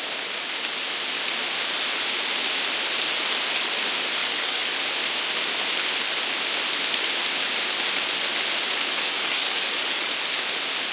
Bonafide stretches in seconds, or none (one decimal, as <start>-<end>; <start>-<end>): 0.0-4.2; 4.8-8.9; 10.1-10.9